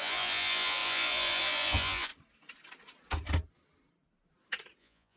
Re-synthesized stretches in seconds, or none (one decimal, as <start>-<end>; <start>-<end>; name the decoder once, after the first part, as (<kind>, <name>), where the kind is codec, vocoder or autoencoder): 0.0-2.1 (vocoder, Vocos); 4.8-5.2